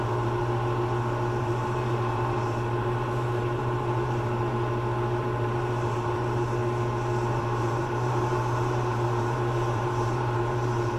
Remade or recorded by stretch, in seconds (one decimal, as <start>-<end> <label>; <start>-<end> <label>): 0.0-0.4 remade; 0.4-1.4 recorded; 1.4-4.5 remade; 4.5-5.2 recorded; 5.2-6.6 remade; 6.6-7.3 recorded; 7.3-11.0 remade